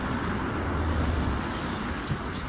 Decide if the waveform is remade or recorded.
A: recorded